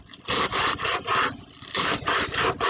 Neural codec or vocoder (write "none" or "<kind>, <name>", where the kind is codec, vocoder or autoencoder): none